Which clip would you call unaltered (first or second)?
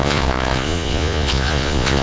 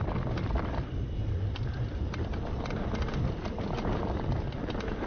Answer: second